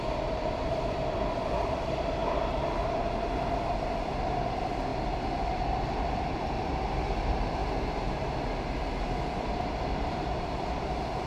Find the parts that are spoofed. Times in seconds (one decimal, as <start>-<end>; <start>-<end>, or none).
0.0-2.2; 3.5-7.6; 9.0-11.3